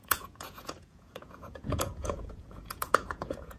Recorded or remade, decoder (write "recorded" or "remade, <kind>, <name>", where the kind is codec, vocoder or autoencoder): remade, vocoder, Vocos